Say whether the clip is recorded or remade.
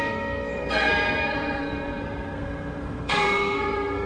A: remade